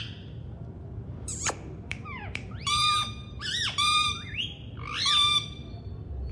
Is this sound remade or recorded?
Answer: remade